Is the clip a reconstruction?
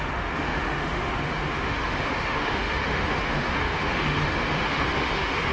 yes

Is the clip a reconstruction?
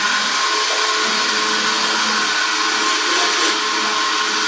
no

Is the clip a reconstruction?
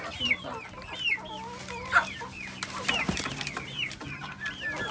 no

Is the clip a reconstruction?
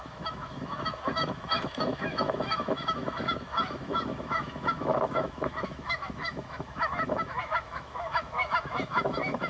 yes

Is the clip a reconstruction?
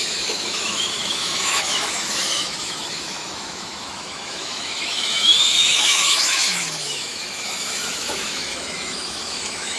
yes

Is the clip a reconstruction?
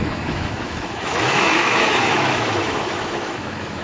yes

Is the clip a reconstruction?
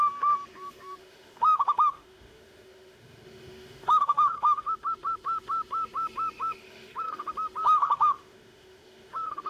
yes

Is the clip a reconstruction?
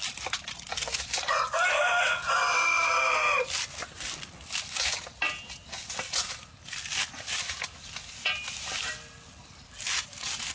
no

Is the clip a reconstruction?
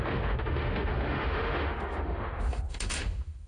yes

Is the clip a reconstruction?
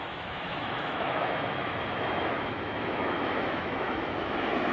yes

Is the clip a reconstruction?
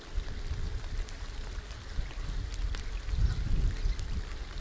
no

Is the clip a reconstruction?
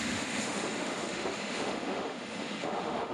yes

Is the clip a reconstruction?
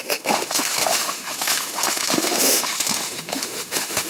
yes